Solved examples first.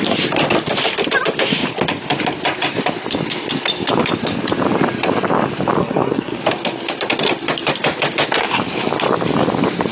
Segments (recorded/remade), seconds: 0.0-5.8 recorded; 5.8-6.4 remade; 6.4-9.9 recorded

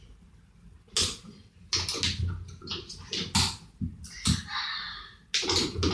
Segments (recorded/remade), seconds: 0.0-5.9 recorded

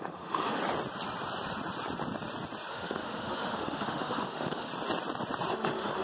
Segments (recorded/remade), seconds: 0.0-0.6 remade; 0.6-2.7 recorded; 2.7-4.7 remade; 4.7-5.5 recorded; 5.5-6.0 remade